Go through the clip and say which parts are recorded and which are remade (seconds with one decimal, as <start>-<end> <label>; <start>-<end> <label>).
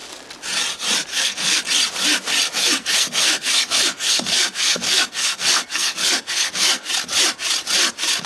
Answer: 0.0-1.1 recorded; 1.1-1.6 remade; 1.6-2.6 recorded; 2.6-6.9 remade; 6.9-8.3 recorded